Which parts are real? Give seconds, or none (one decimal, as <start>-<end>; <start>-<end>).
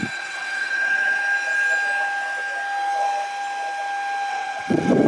1.2-4.3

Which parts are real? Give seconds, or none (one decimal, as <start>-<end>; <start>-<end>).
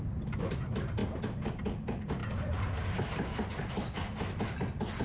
0.0-2.2; 3.6-5.0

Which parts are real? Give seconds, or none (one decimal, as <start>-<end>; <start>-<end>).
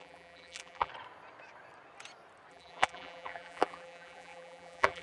0.9-2.5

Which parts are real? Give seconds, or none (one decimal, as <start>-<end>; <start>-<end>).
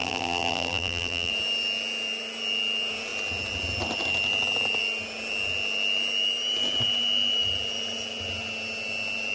1.3-9.3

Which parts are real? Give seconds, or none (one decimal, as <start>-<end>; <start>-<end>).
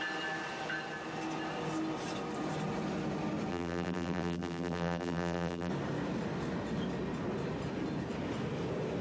0.0-3.5; 5.7-9.0